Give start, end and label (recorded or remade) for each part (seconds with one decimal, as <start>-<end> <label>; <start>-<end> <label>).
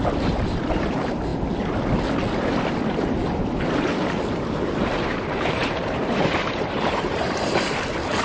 0.0-1.3 remade; 1.3-2.7 recorded; 2.7-3.2 remade; 3.2-4.3 recorded; 4.3-8.2 remade